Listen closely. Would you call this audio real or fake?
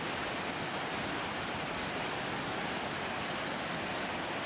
real